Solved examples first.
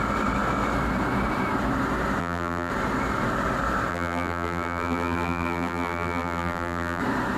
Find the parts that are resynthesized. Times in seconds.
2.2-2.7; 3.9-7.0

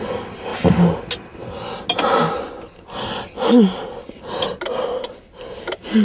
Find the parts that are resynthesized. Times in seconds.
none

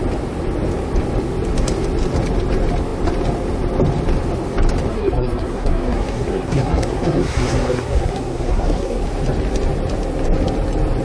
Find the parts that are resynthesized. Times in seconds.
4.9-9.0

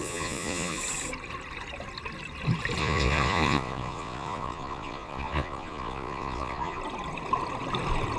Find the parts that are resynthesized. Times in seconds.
0.0-0.8; 2.8-6.8

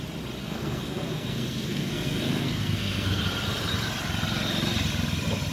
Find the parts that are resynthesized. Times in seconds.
0.4-3.2

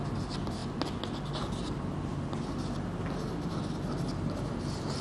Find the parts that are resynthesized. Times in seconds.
none